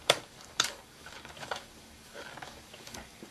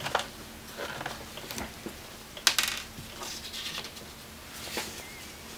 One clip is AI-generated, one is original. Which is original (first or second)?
second